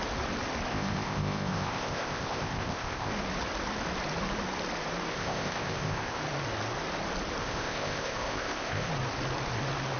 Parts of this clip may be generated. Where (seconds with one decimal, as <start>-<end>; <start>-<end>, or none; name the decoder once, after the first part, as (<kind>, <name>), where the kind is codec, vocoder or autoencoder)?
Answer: 0.7-3.1 (codec, ZipCodec); 5.1-6.2; 7.4-8.9